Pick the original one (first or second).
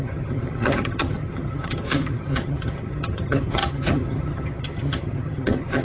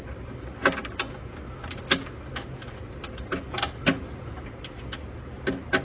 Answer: second